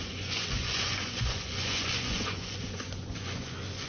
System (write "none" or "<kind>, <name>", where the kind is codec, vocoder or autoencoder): vocoder, Vocos